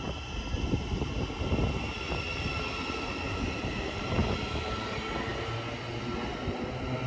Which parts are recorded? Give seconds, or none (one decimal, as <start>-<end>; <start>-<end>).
0.0-7.1